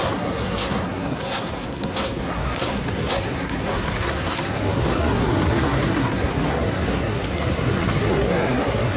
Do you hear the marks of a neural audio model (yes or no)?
yes